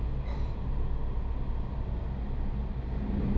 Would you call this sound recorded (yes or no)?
yes